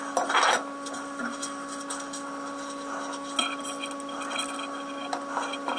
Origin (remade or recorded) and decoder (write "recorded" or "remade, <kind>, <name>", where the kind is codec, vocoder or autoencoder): recorded